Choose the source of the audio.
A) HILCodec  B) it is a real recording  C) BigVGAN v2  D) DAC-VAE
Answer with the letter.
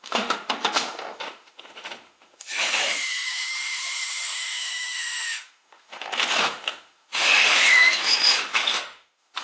D